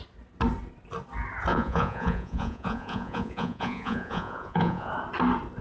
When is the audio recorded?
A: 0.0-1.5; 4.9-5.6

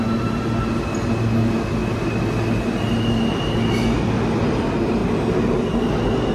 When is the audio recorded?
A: 0.0-6.3

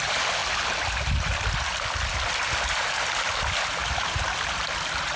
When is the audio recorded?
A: 0.0-3.8; 4.4-5.2

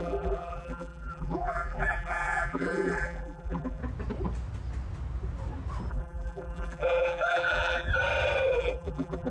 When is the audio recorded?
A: 3.8-5.9; 7.9-8.5

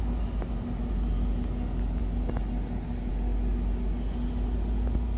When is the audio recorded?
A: 0.0-5.2

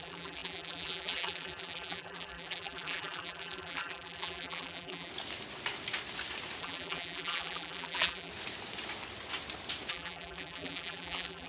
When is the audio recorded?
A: 5.1-6.6; 8.3-9.9

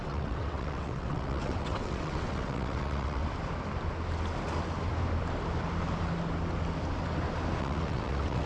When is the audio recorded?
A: 3.2-7.6